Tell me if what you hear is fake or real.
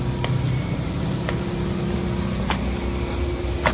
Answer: real